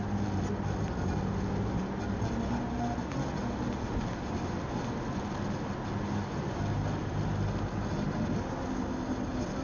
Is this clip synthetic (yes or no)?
no